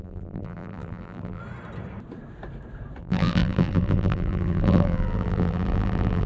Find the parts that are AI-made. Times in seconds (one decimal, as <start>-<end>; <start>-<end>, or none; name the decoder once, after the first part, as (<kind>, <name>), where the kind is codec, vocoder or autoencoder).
0.0-1.4 (vocoder, BigVGAN v2); 3.0-6.3